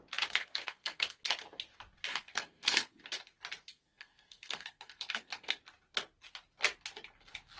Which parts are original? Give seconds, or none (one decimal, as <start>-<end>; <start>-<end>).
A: 0.0-0.4; 1.3-2.1; 3.0-3.7; 5.6-7.6